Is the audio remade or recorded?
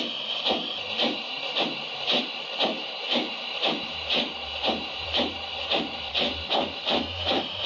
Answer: remade